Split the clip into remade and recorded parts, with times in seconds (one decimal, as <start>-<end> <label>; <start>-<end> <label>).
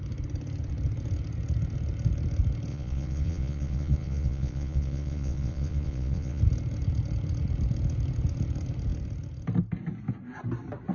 0.0-2.7 recorded; 2.7-6.4 remade; 6.4-10.9 recorded